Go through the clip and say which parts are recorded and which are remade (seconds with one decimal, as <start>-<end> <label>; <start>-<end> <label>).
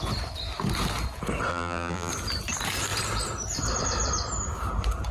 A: 0.0-1.5 recorded; 1.5-2.1 remade; 2.1-5.1 recorded